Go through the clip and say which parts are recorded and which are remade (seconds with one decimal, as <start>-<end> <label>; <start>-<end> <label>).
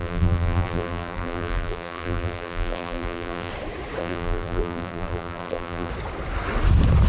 0.0-3.5 remade; 3.5-4.0 recorded; 4.0-5.9 remade; 5.9-7.1 recorded